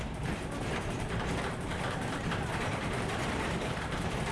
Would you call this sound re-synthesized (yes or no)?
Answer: yes